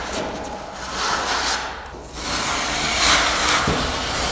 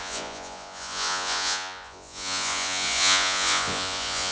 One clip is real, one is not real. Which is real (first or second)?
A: first